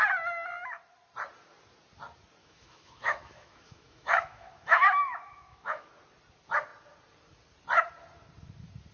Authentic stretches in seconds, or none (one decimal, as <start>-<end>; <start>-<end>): 0.0-2.4; 5.9-8.9